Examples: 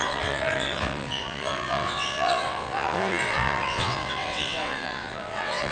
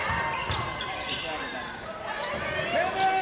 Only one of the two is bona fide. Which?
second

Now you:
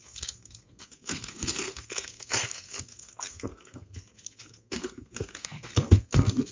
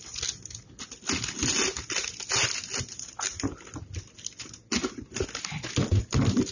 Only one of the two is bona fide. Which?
second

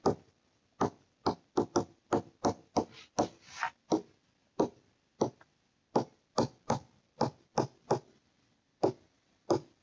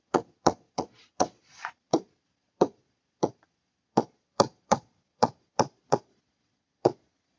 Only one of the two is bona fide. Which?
first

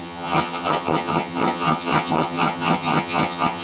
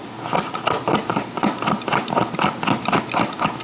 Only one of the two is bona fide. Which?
second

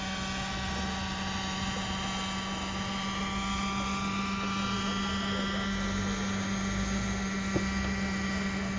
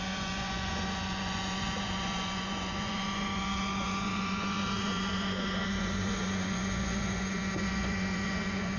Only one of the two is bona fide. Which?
first